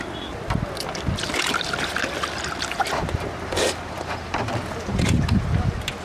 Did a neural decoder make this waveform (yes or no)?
no